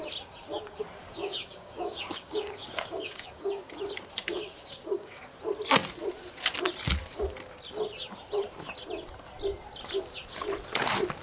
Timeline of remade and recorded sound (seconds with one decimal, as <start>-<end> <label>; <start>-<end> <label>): 0.0-1.0 recorded; 1.0-3.7 remade; 3.7-4.3 recorded; 4.3-5.2 remade; 5.2-11.2 recorded